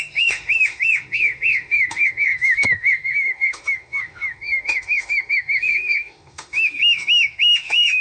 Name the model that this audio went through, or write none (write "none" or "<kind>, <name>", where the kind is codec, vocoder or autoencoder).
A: autoencoder, DAC-VAE